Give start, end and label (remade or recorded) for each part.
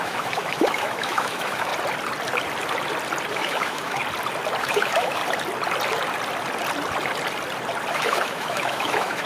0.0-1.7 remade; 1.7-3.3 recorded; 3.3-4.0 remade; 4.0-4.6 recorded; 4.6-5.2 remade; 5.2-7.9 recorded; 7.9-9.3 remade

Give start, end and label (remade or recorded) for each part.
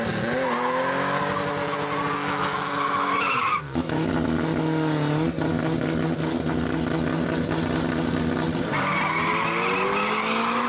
0.0-2.2 recorded; 2.2-4.1 remade; 4.1-10.7 recorded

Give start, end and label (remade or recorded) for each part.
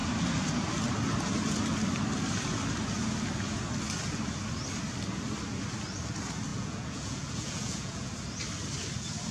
0.0-6.5 recorded; 6.5-8.1 remade; 8.1-9.3 recorded